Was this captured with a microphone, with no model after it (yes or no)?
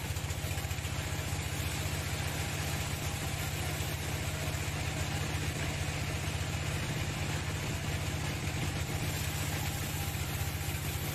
yes